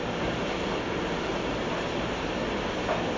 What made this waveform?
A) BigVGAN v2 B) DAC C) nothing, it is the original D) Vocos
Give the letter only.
C